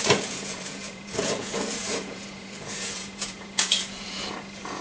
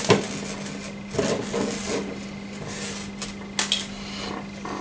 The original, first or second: second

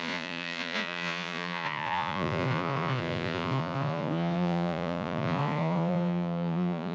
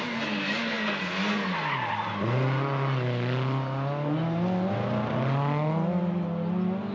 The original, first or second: second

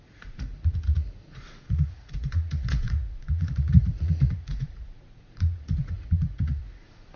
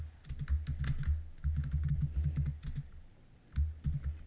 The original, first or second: second